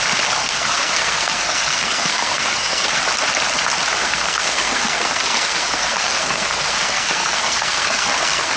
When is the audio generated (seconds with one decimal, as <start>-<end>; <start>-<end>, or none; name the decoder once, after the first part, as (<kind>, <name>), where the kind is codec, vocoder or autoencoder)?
0.4-3.0 (codec, SNAC); 4.0-8.6